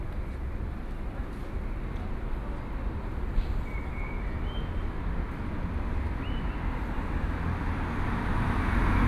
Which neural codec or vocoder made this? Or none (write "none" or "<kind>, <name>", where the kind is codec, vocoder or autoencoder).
none